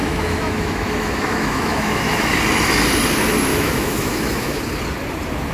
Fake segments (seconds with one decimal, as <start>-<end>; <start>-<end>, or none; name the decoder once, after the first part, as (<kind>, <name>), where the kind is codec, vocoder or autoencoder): 0.0-2.3 (autoencoder, DAC-VAE); 3.5-4.6